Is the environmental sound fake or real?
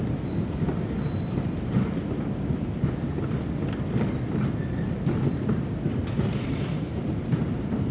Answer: real